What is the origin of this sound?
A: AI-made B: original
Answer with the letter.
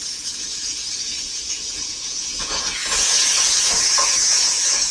A